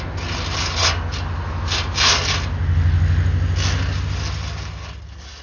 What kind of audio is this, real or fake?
real